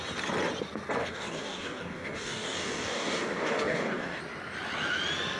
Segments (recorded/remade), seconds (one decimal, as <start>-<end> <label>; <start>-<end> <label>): 0.0-1.0 recorded; 1.0-4.2 remade; 4.2-5.4 recorded